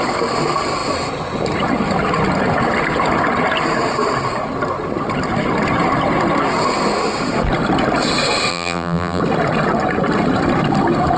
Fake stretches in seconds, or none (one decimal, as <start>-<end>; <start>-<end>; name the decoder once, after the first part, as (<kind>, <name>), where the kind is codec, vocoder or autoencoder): 8.5-9.2 (vocoder, BigVGAN v2)